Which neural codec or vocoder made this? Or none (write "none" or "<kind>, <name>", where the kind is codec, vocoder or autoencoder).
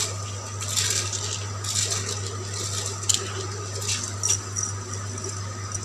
none